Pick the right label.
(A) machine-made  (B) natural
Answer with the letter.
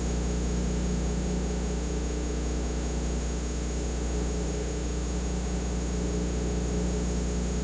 A